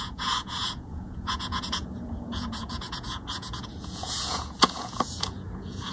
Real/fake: fake